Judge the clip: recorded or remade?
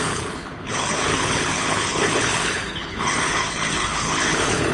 remade